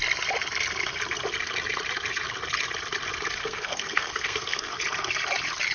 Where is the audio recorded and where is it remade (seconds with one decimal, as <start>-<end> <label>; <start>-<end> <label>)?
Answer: 0.0-3.4 recorded; 3.4-4.7 remade; 4.7-5.7 recorded